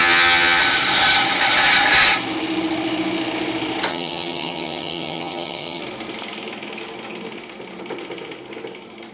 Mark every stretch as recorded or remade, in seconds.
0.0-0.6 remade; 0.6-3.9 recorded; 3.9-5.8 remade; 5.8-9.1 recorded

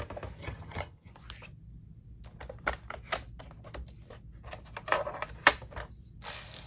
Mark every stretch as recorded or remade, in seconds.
0.0-0.4 recorded; 0.4-1.1 remade; 1.1-6.7 recorded

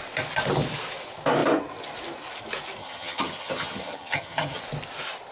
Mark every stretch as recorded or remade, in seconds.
0.0-2.8 recorded; 2.8-4.6 remade; 4.6-5.3 recorded

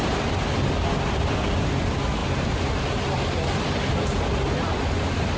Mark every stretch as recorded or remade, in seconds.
0.0-5.4 recorded

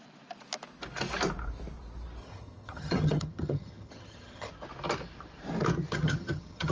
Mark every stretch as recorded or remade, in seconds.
0.0-2.2 recorded; 2.2-4.5 remade; 4.5-5.9 recorded; 5.9-6.7 remade

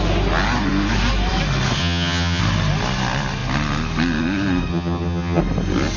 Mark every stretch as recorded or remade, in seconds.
0.0-1.8 recorded; 1.8-2.4 remade; 2.4-4.7 recorded; 4.7-5.4 remade; 5.4-6.0 recorded